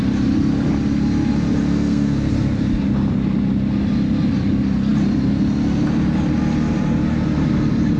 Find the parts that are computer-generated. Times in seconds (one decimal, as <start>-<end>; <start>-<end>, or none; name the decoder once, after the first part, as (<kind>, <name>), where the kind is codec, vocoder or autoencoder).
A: 1.6-2.3 (codec, SNAC)